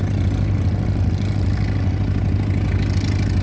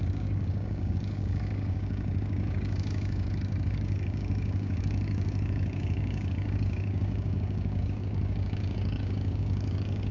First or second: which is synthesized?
second